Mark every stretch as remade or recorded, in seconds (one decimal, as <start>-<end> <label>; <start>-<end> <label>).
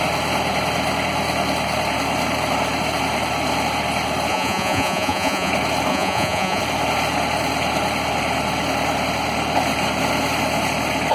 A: 0.0-4.3 recorded; 4.3-5.5 remade; 5.5-5.9 recorded; 5.9-6.6 remade; 6.6-11.1 recorded